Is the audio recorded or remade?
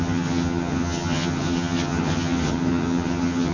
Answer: remade